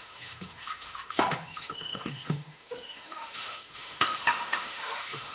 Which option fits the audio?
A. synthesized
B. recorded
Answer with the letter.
A